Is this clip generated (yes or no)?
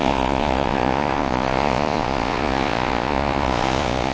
yes